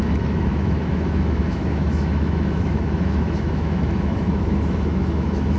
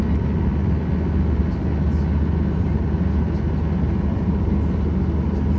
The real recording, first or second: second